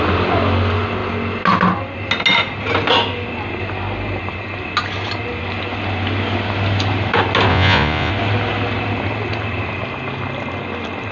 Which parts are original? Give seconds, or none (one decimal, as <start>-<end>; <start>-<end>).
0.0-7.5; 8.1-11.1